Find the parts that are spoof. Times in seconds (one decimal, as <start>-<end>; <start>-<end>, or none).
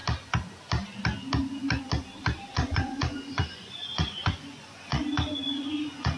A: 2.5-6.2